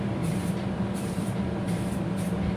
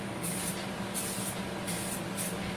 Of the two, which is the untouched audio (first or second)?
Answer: second